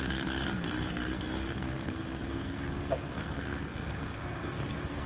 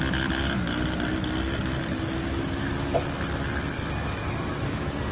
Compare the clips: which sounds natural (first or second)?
second